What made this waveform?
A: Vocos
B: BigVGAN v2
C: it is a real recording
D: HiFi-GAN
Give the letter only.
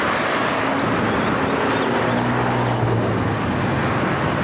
C